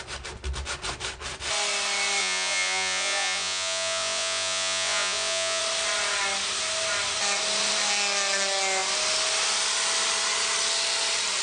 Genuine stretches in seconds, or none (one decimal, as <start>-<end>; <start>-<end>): 0.0-2.2; 5.6-11.4